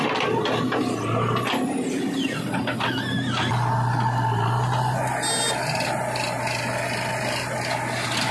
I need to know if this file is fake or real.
real